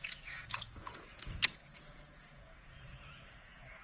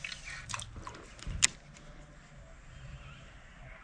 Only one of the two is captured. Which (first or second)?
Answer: second